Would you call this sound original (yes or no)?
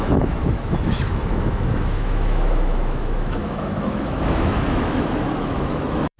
no